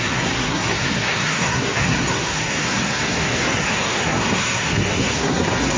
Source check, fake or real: fake